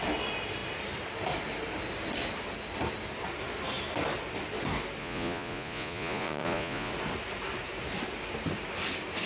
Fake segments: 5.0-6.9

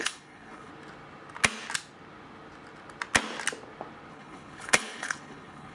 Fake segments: 0.0-0.7; 4.1-5.7

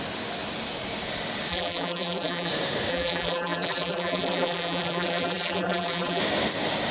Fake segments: 1.5-2.5; 2.9-6.2

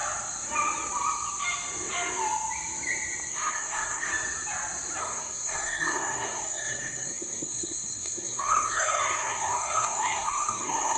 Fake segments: 3.3-4.1; 5.0-11.0